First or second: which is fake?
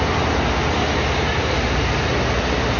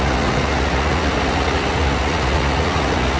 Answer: second